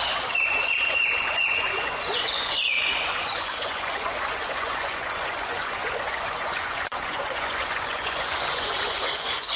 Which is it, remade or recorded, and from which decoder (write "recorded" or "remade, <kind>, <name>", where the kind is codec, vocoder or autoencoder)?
remade, vocoder, Vocos